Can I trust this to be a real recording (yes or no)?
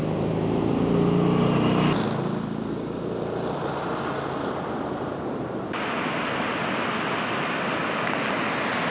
yes